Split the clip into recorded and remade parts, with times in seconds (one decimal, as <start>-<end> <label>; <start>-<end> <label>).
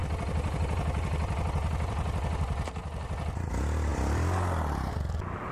0.0-3.3 remade; 3.3-3.9 recorded; 3.9-4.9 remade; 4.9-5.5 recorded